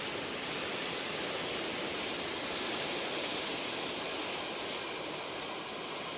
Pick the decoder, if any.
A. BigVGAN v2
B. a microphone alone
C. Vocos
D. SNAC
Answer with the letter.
B